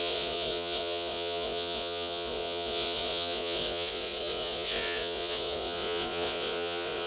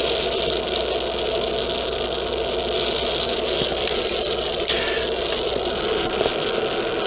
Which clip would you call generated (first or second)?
first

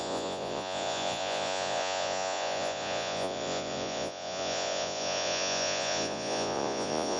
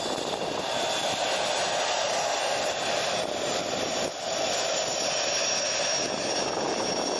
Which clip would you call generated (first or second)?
first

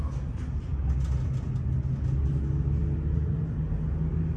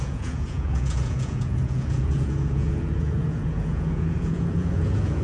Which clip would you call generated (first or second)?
second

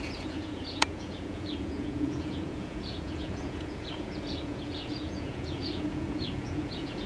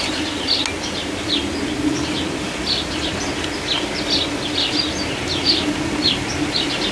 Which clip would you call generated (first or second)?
first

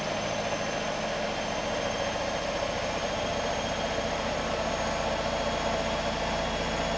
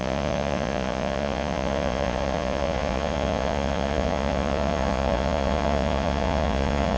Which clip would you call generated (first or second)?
second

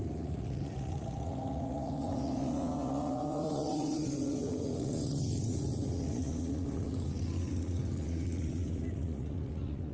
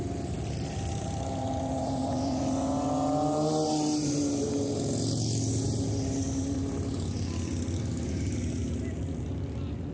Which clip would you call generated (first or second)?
first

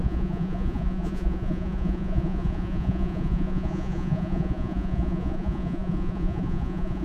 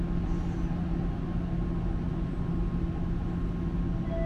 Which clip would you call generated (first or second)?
first